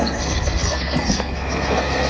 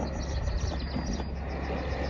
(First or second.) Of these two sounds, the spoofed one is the first